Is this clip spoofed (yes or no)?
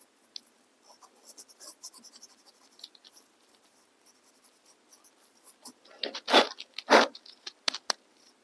no